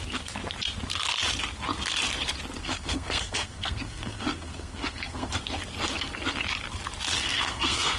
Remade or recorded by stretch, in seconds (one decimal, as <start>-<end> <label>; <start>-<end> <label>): 0.0-2.6 recorded; 2.6-5.3 remade; 5.3-7.2 recorded; 7.2-8.0 remade